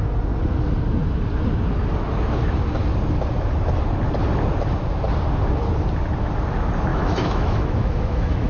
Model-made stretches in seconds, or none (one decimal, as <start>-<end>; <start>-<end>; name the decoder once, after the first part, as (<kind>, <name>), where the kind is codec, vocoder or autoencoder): 6.9-8.5 (autoencoder, DAC-VAE)